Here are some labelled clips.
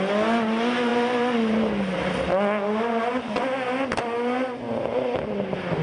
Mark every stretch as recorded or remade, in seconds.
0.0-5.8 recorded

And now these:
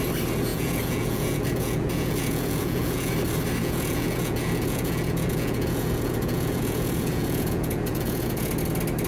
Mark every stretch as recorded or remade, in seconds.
0.0-0.5 recorded; 0.5-3.1 remade; 3.1-3.6 recorded; 3.6-8.5 remade; 8.5-9.1 recorded

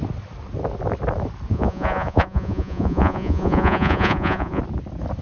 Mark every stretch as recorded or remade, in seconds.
0.0-1.5 recorded; 1.5-4.6 remade; 4.6-5.2 recorded

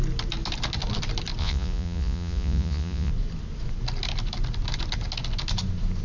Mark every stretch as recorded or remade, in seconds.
0.0-1.4 recorded; 1.4-3.1 remade; 3.1-6.0 recorded